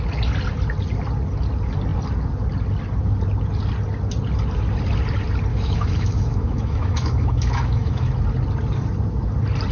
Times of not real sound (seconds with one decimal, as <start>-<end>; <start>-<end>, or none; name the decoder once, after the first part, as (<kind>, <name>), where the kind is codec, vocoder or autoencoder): 5.5-8.1 (autoencoder, DAC-VAE)